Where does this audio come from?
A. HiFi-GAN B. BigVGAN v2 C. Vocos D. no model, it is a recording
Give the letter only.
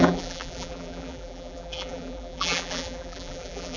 B